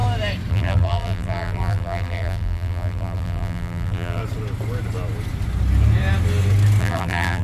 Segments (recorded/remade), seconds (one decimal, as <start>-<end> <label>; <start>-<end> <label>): 0.0-0.5 recorded; 0.5-4.2 remade; 4.2-6.8 recorded; 6.8-7.4 remade